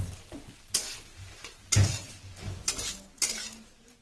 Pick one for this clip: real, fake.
real